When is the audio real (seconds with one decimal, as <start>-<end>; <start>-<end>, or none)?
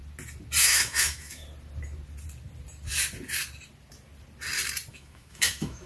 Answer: 0.0-0.6; 1.4-4.9